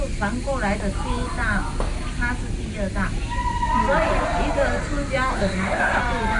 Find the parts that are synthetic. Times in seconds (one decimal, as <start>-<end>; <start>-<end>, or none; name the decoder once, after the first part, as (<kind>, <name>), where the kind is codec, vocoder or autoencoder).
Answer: 5.3-6.0 (codec, SNAC)